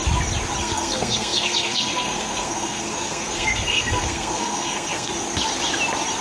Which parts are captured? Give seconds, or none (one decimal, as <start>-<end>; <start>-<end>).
0.0-0.6; 5.1-6.2